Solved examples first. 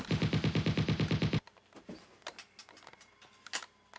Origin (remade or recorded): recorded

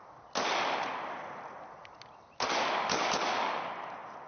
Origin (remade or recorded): recorded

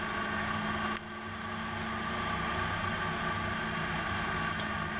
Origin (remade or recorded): recorded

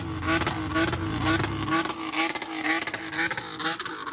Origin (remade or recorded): recorded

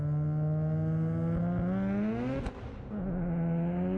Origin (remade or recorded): recorded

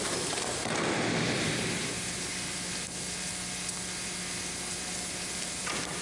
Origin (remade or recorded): recorded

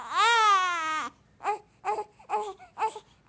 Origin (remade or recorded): recorded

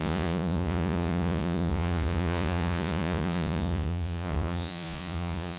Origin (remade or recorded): remade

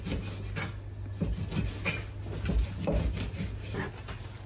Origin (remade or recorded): recorded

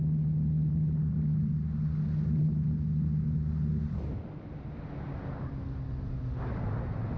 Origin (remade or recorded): recorded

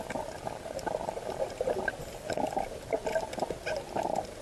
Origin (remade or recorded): recorded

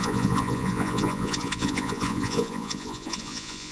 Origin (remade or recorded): remade